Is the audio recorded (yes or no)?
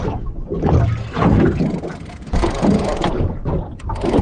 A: yes